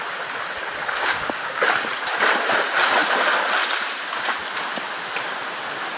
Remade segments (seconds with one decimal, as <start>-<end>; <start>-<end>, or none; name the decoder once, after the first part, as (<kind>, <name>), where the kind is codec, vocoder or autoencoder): 0.8-1.6 (codec, DAC)